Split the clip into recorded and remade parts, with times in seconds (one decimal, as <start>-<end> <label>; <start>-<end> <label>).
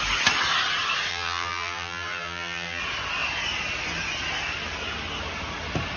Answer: 0.0-1.1 recorded; 1.1-2.8 remade; 2.8-6.0 recorded